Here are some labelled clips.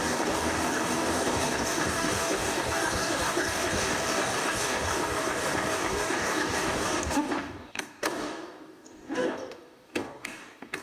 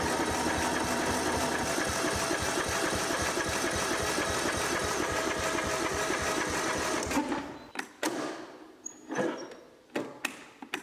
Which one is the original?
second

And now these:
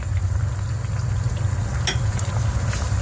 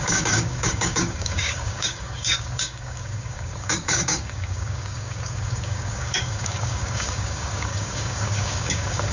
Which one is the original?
first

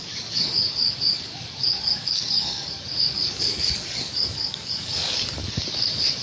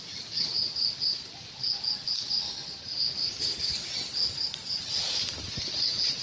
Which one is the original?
second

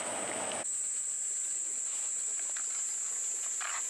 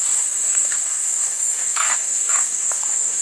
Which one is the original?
first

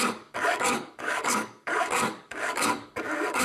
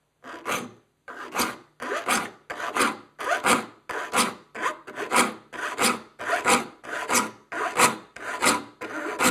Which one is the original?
second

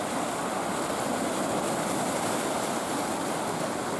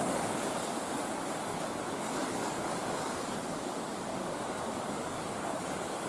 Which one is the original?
first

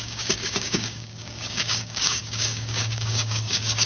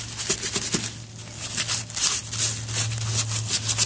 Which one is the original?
second